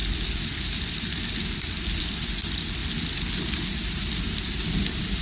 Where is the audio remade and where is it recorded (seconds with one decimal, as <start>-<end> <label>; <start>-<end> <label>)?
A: 0.0-2.8 remade; 2.8-3.7 recorded; 3.7-5.2 remade